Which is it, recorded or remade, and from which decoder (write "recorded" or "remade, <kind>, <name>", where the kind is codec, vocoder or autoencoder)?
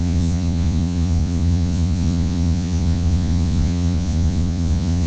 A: remade, vocoder, Vocos